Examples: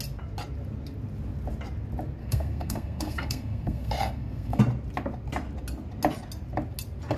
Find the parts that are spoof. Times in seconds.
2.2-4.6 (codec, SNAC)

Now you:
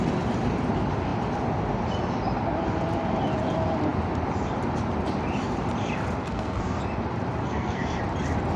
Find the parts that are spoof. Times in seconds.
6.2-6.8 (codec, SNAC); 7.4-8.0

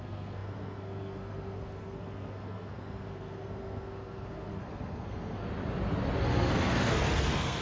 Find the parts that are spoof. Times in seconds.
0.0-5.5 (codec, SNAC); 6.2-7.6

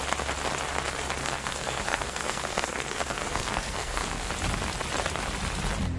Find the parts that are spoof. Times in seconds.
1.2-4.3 (codec, SNAC)

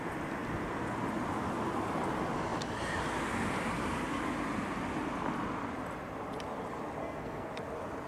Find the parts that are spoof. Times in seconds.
7.0-7.5 (codec, SNAC)

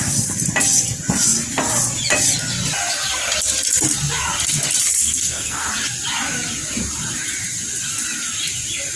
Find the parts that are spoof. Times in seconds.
5.0-5.7 (codec, SNAC)